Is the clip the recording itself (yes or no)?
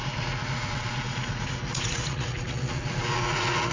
no